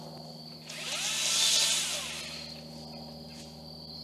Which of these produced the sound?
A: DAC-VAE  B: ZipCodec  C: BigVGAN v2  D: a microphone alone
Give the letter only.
D